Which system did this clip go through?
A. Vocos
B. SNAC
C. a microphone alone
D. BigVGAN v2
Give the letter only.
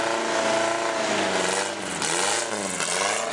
C